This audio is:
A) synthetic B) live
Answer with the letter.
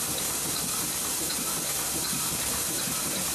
B